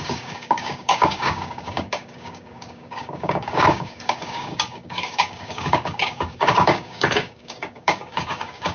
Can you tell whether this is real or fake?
fake